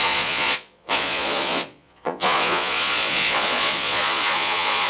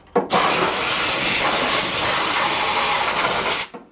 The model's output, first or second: first